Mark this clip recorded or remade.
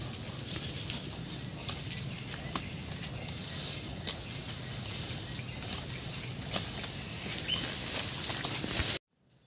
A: recorded